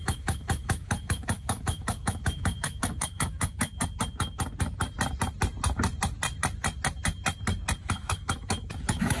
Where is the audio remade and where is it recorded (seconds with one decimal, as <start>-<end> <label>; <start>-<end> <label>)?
0.0-3.7 remade; 3.7-7.8 recorded; 7.8-9.2 remade

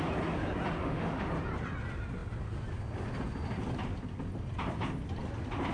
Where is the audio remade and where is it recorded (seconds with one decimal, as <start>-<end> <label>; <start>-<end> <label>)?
0.0-0.8 recorded; 0.8-1.3 remade; 1.3-5.7 recorded

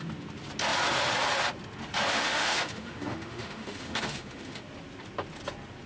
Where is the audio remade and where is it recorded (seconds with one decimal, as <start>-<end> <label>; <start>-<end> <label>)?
0.0-2.1 recorded; 2.1-4.6 remade; 4.6-5.9 recorded

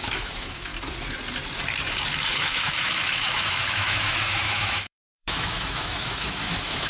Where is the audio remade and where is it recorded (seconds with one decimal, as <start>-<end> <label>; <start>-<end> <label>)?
0.0-0.7 remade; 0.7-2.3 recorded; 2.3-6.9 remade